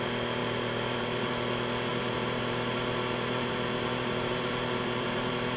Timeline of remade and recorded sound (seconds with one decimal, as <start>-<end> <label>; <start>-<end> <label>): 0.0-0.4 recorded; 0.4-1.3 remade; 1.3-1.9 recorded; 1.9-5.6 remade